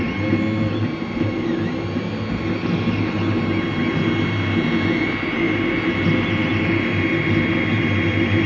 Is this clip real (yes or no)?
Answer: yes